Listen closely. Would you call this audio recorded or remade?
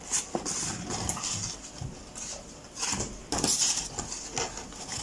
recorded